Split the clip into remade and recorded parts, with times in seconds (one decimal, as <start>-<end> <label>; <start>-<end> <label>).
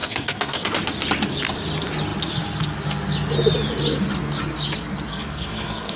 0.0-0.7 remade; 0.7-5.1 recorded; 5.1-6.0 remade